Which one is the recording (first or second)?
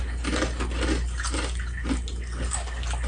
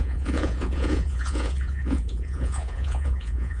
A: first